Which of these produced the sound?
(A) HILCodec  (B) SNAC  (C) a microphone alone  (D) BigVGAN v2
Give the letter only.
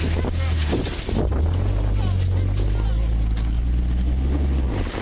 C